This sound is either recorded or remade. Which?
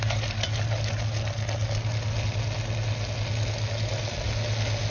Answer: recorded